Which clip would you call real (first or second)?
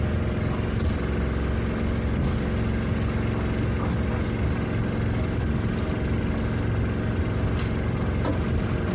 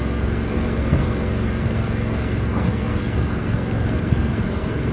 first